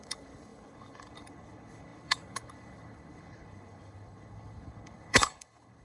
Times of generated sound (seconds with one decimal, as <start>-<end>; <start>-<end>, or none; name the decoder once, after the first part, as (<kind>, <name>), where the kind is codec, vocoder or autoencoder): 0.0-5.8 (codec, HILCodec)